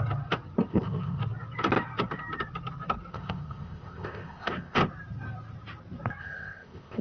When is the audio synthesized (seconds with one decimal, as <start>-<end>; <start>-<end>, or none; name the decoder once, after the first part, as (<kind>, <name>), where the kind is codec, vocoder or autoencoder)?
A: 0.7-1.2 (codec, ZipCodec); 3.1-4.8; 6.2-7.0